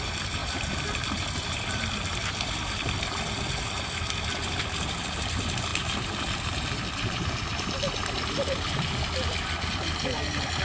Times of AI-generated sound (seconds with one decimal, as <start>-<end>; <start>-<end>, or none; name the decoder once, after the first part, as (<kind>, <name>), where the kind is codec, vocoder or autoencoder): 0.0-5.7 (vocoder, BigVGAN v2); 6.7-10.6